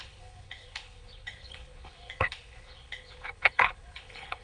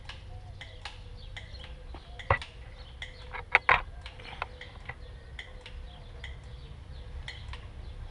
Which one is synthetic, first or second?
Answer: first